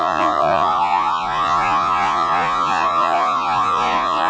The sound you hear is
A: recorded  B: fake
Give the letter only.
B